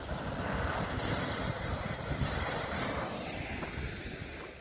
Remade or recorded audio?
recorded